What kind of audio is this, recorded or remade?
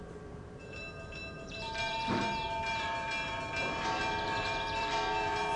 remade